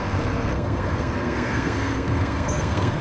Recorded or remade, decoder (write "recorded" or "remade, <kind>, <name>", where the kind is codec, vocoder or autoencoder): remade, codec, SNAC